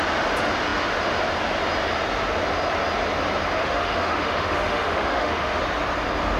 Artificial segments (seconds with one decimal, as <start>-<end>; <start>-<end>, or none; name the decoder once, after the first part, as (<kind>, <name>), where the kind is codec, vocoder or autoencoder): 3.6-5.6 (autoencoder, DAC-VAE)